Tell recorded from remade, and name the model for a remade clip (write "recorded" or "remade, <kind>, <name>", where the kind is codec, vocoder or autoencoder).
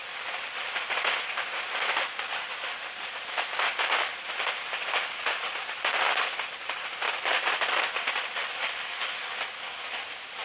recorded